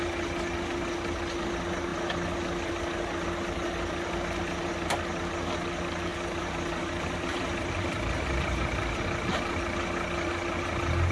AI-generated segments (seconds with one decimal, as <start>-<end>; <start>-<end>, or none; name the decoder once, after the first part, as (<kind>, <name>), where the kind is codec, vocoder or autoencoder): 6.1-9.0 (vocoder, BigVGAN v2)